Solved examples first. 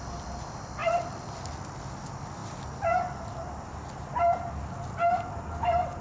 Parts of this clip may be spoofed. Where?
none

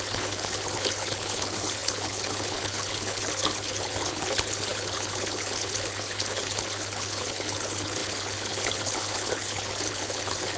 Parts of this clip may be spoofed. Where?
0.0-10.6 (codec, HILCodec)

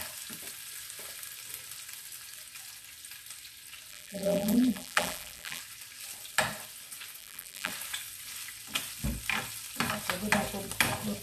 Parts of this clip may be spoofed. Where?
3.9-5.6 (vocoder, BigVGAN v2); 7.2-7.7

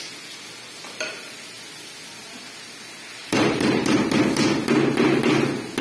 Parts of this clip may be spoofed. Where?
3.2-4.0 (vocoder, BigVGAN v2)

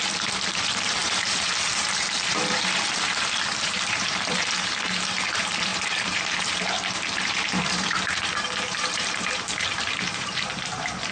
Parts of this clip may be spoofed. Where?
0.0-11.1 (vocoder, BigVGAN v2)

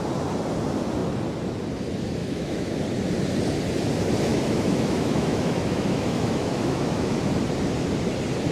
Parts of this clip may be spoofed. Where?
2.2-2.8 (autoencoder, DAC-VAE); 4.3-7.3

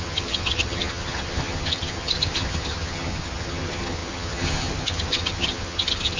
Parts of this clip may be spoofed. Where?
0.0-6.2 (vocoder, HiFi-GAN)